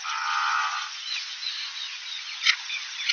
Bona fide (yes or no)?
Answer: no